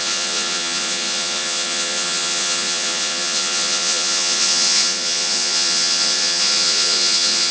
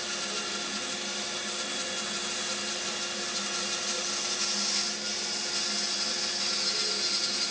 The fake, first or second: first